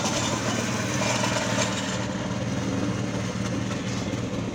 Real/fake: real